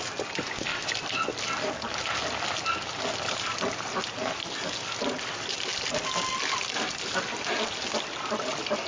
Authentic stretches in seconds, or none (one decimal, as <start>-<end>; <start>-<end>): 0.0-8.9